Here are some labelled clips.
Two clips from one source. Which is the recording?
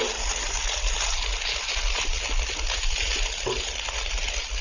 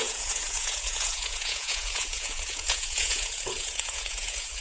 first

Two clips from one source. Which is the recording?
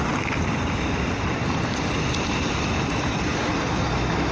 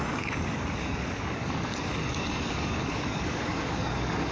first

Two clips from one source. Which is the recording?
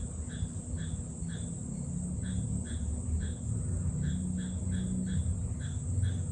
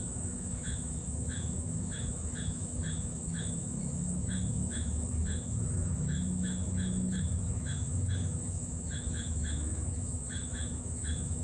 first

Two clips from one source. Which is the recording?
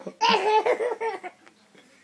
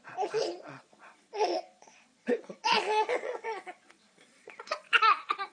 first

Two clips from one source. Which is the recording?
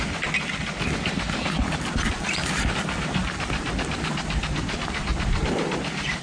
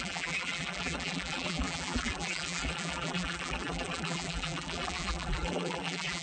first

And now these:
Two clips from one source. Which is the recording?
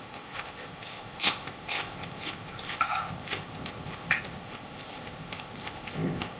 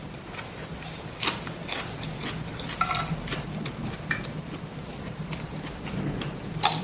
second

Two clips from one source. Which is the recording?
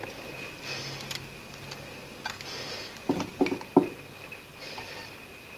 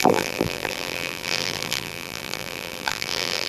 first